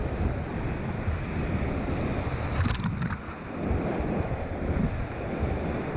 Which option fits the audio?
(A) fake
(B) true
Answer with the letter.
B